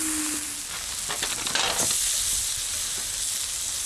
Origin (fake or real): real